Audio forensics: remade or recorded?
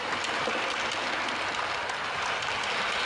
recorded